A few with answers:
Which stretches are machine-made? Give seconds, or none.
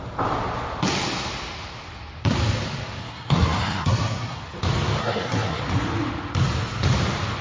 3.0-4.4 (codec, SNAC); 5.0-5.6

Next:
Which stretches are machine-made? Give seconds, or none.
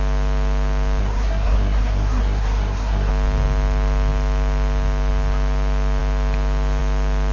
1.0-3.1 (codec, SNAC)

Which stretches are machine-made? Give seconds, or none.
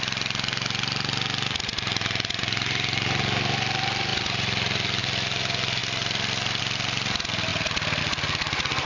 none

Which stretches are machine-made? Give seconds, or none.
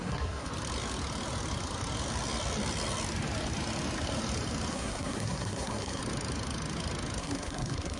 0.0-0.5 (codec, SNAC); 4.7-6.0; 7.2-8.0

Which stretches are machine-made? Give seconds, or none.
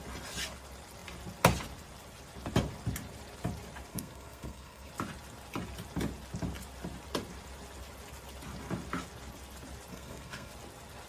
3.9-4.9 (codec, SNAC); 9.9-10.5